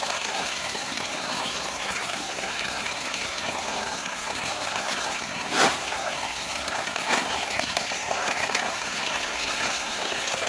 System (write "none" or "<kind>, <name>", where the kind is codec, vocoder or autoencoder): codec, SNAC